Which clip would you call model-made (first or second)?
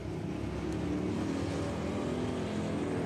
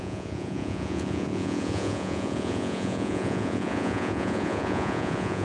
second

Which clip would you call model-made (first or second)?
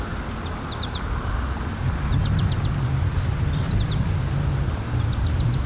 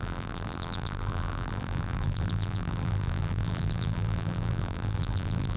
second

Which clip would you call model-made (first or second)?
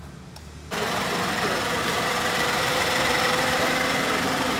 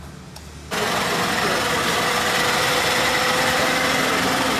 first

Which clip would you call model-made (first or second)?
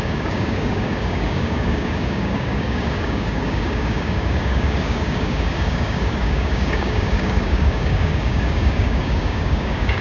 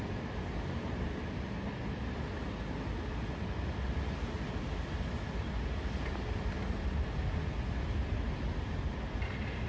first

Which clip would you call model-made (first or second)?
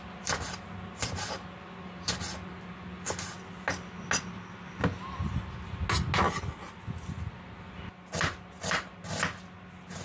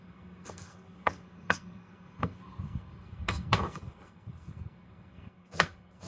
second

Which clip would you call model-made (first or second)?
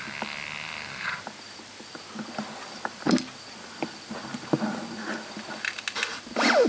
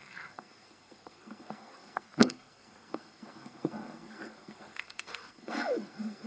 second